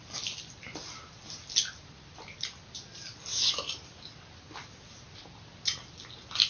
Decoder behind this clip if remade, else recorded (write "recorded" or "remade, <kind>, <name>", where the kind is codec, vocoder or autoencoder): recorded